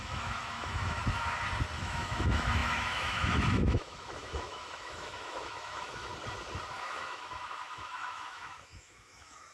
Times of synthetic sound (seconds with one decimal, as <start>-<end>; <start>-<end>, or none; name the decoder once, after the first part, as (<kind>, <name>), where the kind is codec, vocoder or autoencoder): 0.0-1.0 (autoencoder, DAC-VAE); 1.8-6.1; 6.7-9.5